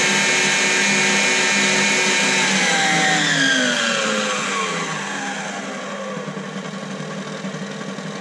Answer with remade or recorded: recorded